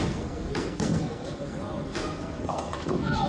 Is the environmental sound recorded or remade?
remade